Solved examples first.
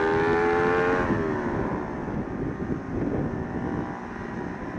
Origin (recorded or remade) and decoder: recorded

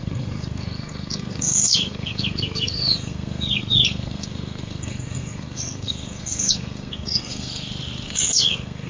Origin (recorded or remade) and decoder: remade, codec, SNAC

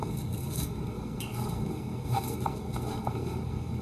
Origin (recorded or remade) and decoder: remade, codec, SNAC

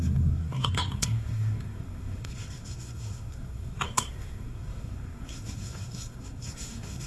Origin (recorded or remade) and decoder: remade, codec, SNAC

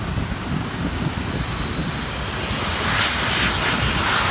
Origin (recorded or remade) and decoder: recorded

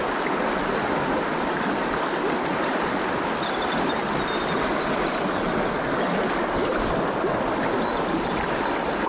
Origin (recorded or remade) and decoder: recorded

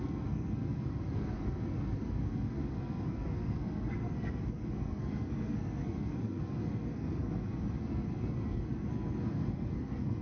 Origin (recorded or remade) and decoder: remade, codec, SNAC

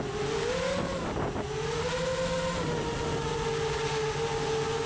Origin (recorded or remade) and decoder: recorded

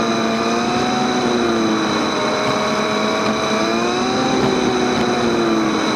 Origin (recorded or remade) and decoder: recorded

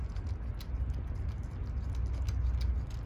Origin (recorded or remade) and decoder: recorded